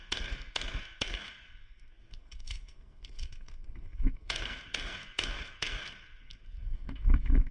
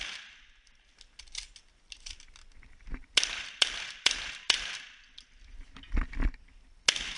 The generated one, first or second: first